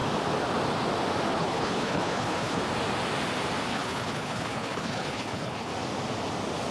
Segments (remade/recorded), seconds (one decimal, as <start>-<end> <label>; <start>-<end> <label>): 0.0-1.3 recorded; 1.3-2.6 remade; 2.6-3.7 recorded; 3.7-5.7 remade; 5.7-6.7 recorded